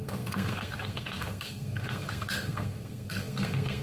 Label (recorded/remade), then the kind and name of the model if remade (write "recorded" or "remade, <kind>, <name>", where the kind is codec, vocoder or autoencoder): remade, codec, SNAC